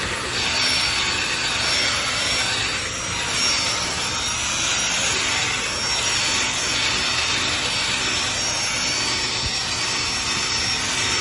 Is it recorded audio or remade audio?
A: recorded